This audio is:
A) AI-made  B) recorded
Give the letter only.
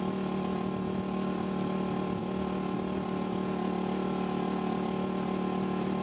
B